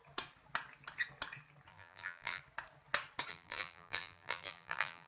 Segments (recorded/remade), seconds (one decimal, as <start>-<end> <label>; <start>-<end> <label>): 0.0-1.7 recorded; 1.7-2.4 remade; 2.4-3.3 recorded; 3.3-5.1 remade